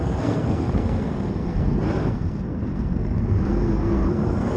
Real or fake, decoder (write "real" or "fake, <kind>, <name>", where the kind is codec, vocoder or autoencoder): fake, codec, SNAC